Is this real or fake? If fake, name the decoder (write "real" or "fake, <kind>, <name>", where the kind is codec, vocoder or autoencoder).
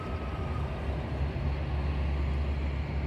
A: real